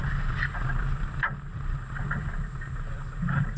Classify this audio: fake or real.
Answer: fake